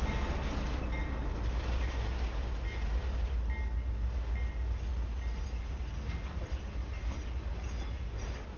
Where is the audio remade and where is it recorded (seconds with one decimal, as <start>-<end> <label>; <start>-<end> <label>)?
0.0-1.3 recorded; 1.3-2.1 remade; 2.1-2.7 recorded; 2.7-3.3 remade; 3.3-8.6 recorded